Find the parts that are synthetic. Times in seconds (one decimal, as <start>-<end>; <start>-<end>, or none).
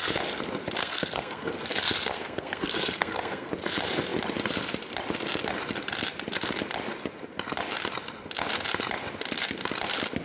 0.8-3.5